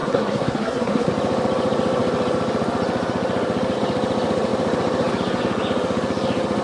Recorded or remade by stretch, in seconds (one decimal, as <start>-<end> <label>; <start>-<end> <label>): 0.0-1.1 remade; 1.1-6.6 recorded